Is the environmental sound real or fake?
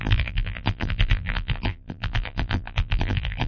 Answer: fake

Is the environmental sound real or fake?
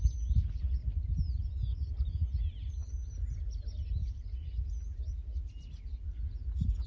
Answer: real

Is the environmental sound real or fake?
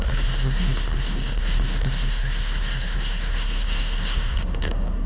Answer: fake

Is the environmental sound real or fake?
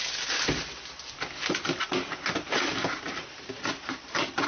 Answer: real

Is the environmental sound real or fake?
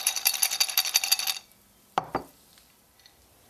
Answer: fake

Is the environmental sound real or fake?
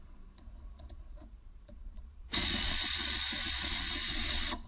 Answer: fake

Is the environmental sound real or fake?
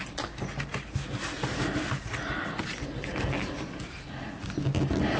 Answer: real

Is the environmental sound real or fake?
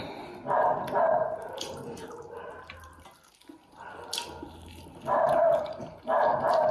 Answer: real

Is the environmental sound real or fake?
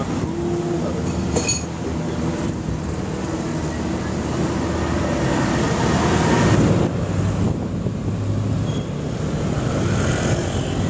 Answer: real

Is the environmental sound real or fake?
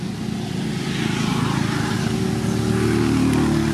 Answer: real